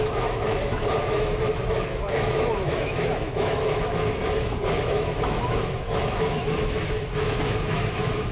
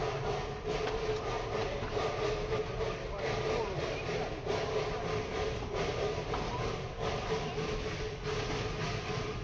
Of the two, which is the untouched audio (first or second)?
second